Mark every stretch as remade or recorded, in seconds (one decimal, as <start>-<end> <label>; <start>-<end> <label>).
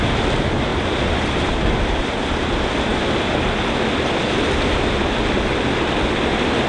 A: 0.0-6.7 recorded